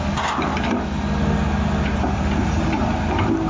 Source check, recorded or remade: recorded